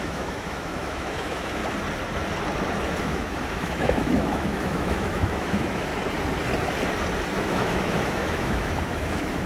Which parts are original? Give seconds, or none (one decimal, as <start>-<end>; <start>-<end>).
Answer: 1.6-3.0; 5.9-7.4